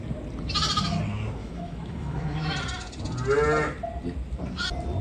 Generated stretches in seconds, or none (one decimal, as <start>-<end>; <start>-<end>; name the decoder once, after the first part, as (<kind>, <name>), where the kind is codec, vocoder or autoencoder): 1.4-2.5 (autoencoder, DAC-VAE)